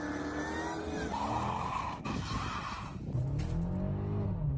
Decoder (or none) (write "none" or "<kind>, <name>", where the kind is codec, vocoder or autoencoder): none